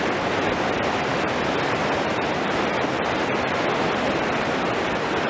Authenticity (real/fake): fake